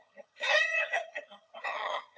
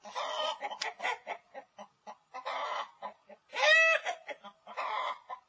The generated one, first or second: first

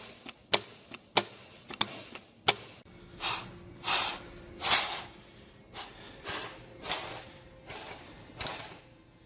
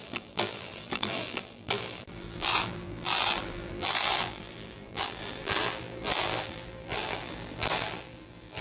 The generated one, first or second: second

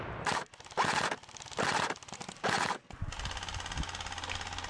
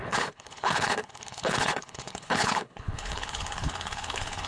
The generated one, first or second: second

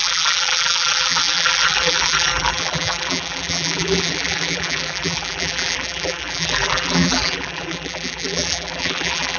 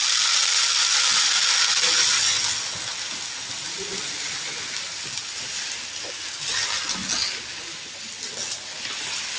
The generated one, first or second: first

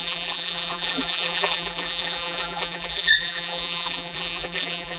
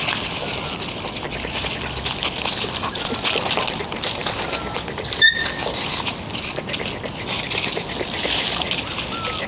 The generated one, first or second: first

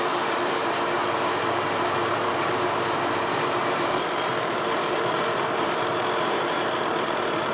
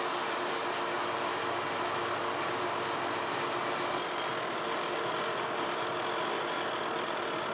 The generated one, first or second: first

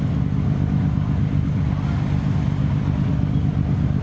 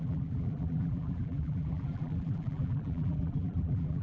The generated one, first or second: second